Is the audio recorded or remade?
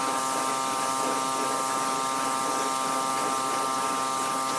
recorded